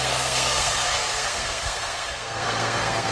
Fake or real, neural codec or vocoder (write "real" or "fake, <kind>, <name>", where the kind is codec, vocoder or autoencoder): fake, codec, SNAC